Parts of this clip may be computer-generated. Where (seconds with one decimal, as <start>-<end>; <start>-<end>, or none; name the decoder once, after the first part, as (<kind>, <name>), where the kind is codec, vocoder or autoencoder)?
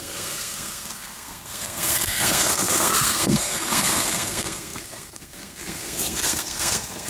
0.0-7.1 (codec, SNAC)